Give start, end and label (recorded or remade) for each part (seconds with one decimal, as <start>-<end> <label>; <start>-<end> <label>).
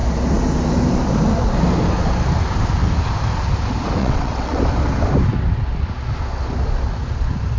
0.0-4.0 recorded; 4.0-4.6 remade; 4.6-7.6 recorded